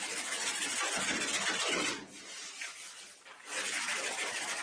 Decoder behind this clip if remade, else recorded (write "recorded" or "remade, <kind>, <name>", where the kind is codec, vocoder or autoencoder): recorded